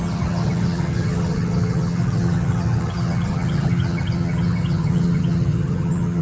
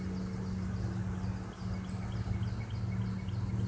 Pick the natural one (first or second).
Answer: second